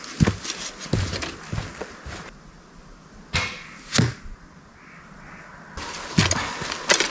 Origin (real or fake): real